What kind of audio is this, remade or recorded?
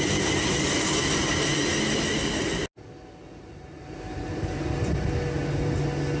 recorded